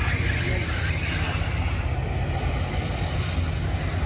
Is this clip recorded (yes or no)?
yes